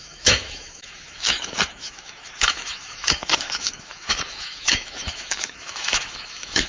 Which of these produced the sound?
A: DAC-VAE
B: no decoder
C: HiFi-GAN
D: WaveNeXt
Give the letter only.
A